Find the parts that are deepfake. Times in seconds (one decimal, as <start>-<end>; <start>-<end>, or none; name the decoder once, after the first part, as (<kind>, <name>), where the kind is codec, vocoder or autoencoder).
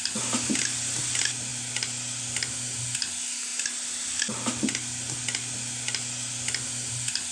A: none